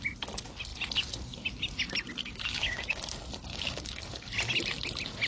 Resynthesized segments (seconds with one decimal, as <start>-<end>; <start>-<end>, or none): 2.2-3.0; 3.5-4.0